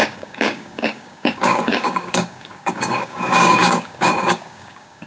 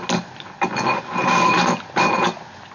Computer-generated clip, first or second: first